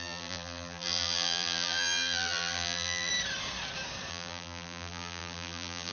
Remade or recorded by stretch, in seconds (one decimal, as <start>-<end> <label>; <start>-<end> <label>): 0.0-3.1 remade; 3.1-4.1 recorded; 4.1-5.9 remade